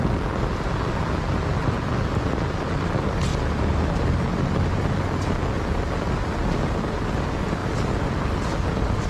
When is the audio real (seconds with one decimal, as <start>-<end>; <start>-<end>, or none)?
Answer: 0.0-9.1